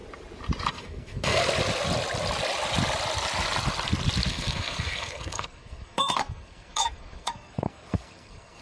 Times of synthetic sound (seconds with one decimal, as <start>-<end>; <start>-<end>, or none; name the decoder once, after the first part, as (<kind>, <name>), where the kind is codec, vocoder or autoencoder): 0.7-1.4 (codec, SNAC); 4.3-8.6